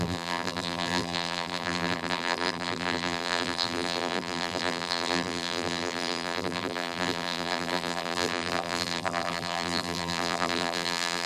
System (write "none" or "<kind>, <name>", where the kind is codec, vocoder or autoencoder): vocoder, BigVGAN v2